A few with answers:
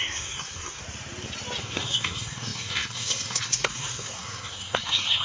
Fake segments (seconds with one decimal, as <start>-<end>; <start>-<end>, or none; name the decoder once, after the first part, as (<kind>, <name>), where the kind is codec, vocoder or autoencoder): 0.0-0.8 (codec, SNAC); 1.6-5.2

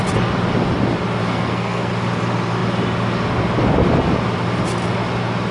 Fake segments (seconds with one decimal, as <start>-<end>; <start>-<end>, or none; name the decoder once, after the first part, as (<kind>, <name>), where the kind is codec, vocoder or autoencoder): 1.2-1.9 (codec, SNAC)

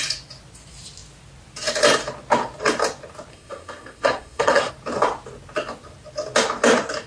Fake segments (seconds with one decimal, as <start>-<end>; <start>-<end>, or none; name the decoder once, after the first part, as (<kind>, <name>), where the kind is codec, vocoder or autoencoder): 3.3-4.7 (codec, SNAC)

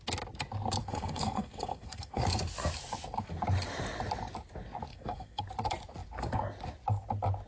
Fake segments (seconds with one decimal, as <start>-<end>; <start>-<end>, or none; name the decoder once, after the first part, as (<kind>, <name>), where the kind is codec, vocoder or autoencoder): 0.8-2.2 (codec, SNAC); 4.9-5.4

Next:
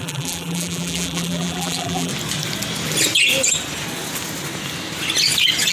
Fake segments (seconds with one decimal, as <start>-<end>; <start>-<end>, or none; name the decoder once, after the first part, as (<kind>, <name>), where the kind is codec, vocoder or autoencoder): 0.0-2.1 (vocoder, BigVGAN v2)

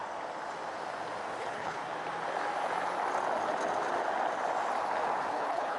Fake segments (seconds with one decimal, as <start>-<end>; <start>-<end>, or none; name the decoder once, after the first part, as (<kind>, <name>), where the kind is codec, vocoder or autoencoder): 1.4-1.8 (codec, HILCodec); 5.3-5.8